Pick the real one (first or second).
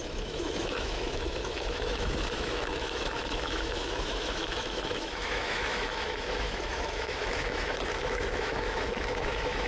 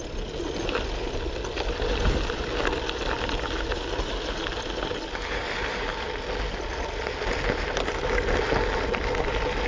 second